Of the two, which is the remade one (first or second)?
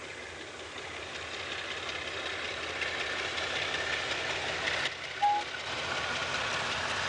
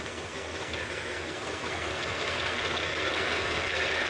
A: second